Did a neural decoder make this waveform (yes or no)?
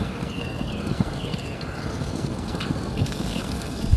yes